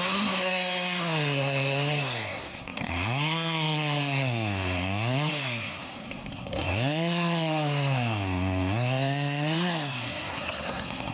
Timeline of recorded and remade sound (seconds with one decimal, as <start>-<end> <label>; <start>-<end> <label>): 0.0-11.1 remade